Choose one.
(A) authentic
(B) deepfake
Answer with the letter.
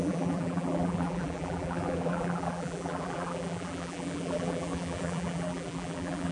B